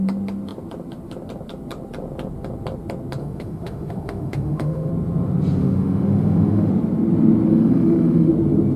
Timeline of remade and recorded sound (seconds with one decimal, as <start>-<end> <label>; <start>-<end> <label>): 0.0-3.2 recorded; 3.2-4.9 remade; 4.9-5.6 recorded; 5.6-6.7 remade; 6.7-7.5 recorded; 7.5-8.3 remade; 8.3-8.8 recorded